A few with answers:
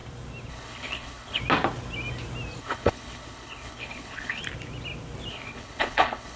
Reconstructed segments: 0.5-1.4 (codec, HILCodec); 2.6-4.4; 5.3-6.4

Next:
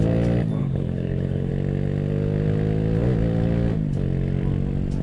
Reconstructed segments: 0.6-1.5 (codec, HILCodec)

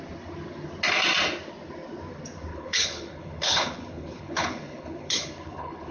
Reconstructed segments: 2.5-5.9 (codec, HILCodec)

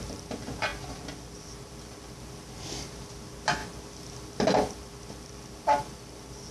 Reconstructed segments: none

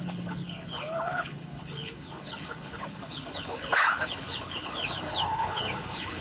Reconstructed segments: 0.0-6.2 (codec, HILCodec)

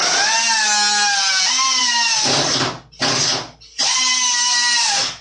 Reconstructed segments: none

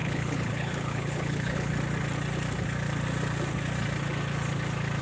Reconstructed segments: 0.0-1.7 (codec, HILCodec)